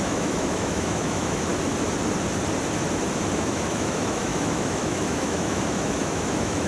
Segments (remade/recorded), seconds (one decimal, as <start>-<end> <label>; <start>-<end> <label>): 0.0-1.5 remade; 1.5-3.3 recorded; 3.3-6.7 remade